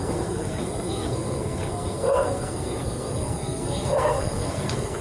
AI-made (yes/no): yes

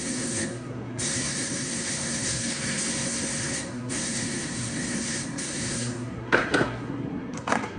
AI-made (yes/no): yes